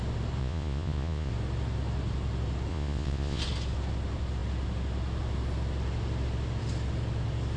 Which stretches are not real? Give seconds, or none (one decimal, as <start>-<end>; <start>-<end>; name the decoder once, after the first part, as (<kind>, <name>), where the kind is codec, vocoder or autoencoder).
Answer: 0.4-1.3 (vocoder, Vocos); 2.7-3.4